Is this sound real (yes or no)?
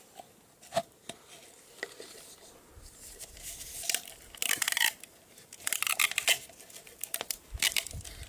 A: yes